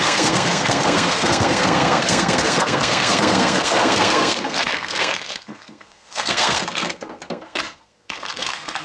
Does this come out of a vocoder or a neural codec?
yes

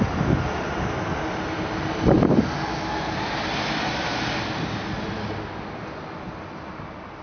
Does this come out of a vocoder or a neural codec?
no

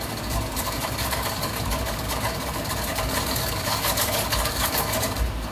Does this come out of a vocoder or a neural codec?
yes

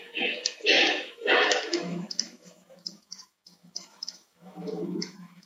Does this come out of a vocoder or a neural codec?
yes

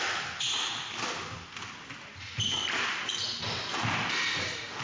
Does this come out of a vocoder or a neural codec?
no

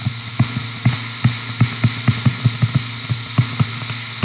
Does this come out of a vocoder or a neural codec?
no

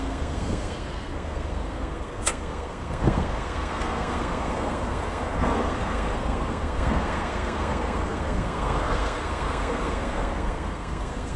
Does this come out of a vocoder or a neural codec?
yes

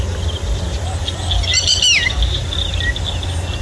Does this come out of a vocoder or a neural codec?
no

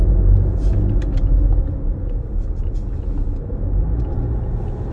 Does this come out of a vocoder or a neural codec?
no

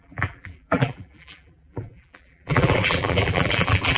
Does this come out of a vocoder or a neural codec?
yes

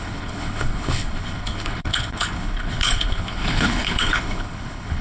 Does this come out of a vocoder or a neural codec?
yes